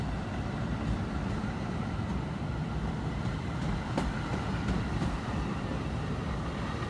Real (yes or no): no